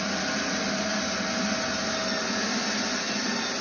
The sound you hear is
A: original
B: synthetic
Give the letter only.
A